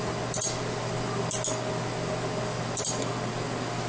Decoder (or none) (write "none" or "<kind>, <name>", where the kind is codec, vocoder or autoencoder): none